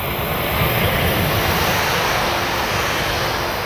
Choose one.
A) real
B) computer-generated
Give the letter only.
A